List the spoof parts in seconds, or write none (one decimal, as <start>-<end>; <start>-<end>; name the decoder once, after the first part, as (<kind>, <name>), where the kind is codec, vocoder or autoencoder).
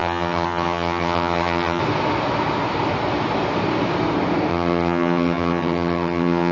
0.0-1.8 (vocoder, HiFi-GAN); 4.5-6.5